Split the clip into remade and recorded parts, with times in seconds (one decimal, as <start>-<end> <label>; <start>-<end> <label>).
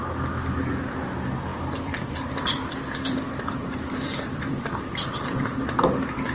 0.0-1.5 recorded; 1.5-5.3 remade; 5.3-6.3 recorded